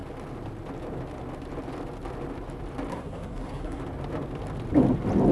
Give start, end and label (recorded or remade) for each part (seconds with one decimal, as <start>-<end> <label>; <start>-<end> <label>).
0.0-2.9 recorded; 2.9-3.8 remade; 3.8-5.3 recorded